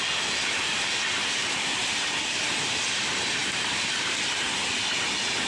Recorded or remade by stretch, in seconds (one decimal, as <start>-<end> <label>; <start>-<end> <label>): 0.0-1.4 recorded; 1.4-2.6 remade; 2.6-3.4 recorded; 3.4-4.4 remade; 4.4-5.5 recorded